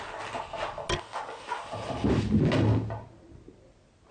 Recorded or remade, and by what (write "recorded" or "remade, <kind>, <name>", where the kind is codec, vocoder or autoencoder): recorded